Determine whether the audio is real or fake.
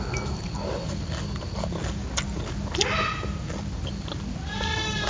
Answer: real